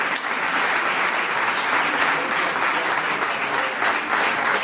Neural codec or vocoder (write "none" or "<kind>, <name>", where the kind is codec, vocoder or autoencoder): none